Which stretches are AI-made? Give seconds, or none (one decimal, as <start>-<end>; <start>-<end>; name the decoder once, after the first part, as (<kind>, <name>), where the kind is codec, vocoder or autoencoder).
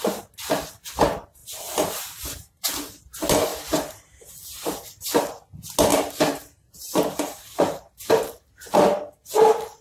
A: 1.4-3.0 (vocoder, BigVGAN v2); 3.5-4.3; 5.9-8.1